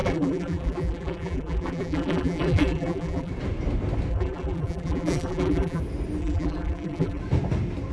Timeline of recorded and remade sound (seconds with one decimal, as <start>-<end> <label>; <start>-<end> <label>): 0.0-3.3 remade; 3.3-4.1 recorded; 4.1-5.8 remade; 5.8-6.2 recorded; 6.2-7.2 remade; 7.2-7.9 recorded